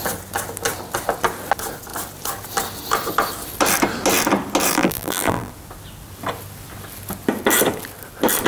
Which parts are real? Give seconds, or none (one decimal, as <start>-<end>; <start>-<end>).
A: 0.0-4.7; 5.5-8.5